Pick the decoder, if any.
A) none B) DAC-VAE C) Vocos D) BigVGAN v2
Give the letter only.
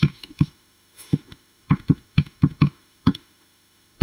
B